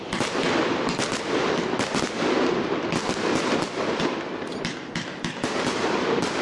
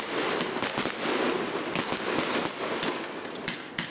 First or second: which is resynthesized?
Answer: first